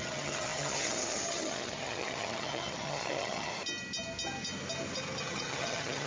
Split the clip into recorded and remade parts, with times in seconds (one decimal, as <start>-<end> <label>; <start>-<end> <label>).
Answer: 0.0-3.5 remade; 3.5-5.2 recorded; 5.2-6.1 remade